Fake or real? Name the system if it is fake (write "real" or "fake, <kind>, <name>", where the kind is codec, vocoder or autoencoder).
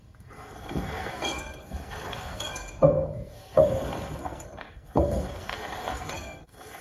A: fake, codec, SNAC